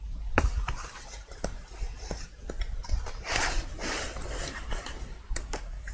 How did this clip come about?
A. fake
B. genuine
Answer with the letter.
A